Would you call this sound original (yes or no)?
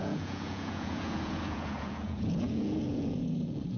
no